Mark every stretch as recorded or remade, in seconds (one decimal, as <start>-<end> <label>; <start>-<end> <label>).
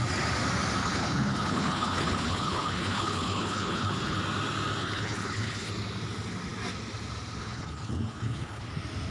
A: 0.0-0.8 recorded; 0.8-4.2 remade; 4.2-4.8 recorded; 4.8-5.7 remade; 5.7-7.4 recorded; 7.4-8.7 remade; 8.7-9.1 recorded